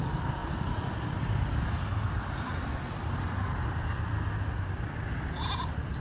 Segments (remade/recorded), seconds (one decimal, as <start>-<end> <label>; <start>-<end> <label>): 0.0-6.0 recorded